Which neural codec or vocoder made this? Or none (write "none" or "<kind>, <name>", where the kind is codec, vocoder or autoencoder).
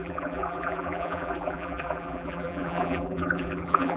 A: vocoder, BigVGAN v2